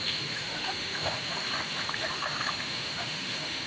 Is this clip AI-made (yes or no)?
yes